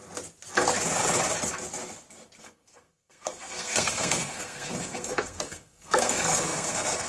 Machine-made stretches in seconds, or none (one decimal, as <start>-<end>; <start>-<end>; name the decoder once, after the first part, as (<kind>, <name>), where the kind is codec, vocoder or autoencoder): 2.4-7.1 (codec, SNAC)